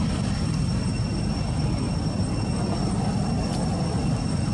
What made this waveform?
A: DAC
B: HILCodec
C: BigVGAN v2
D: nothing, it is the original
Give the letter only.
D